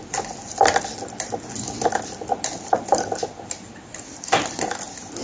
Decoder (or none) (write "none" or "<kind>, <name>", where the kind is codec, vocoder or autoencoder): none